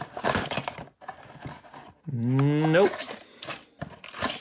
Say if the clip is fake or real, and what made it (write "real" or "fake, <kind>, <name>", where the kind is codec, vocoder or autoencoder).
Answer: real